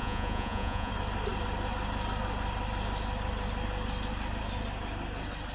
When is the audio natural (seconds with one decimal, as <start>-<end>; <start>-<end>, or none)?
0.9-5.5

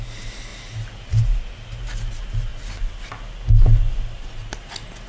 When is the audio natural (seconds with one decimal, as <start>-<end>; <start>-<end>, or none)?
0.0-5.1

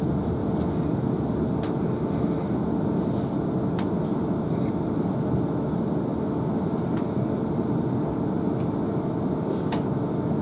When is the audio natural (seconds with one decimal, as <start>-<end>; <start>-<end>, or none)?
0.0-6.1; 6.9-10.4

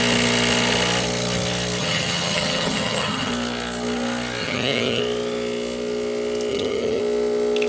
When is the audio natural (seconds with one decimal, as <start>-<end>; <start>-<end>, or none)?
0.0-1.8; 3.3-4.4; 5.0-6.5; 7.0-7.7

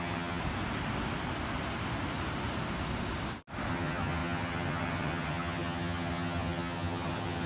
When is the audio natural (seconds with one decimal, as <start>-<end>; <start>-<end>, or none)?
0.4-3.7

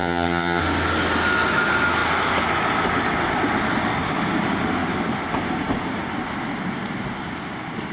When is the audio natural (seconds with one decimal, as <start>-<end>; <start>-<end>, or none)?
0.6-7.9

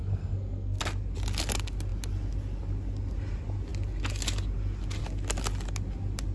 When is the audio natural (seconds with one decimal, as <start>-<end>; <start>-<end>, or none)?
0.8-6.3

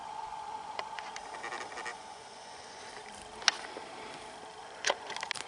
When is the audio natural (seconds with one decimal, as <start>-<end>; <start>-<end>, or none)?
1.1-1.9; 2.8-4.6; 5.1-5.5